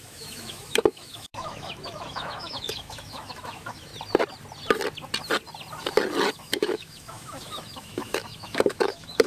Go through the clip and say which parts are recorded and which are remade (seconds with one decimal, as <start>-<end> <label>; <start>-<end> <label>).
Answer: 0.0-3.9 remade; 3.9-6.3 recorded; 6.3-9.3 remade